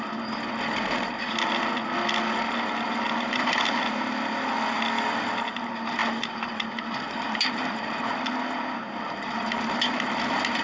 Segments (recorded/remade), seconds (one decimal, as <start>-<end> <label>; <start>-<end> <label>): 0.0-10.6 recorded